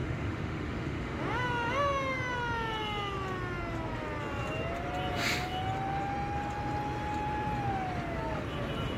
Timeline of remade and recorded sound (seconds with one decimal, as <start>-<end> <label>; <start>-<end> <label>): 0.0-1.2 remade; 1.2-9.0 recorded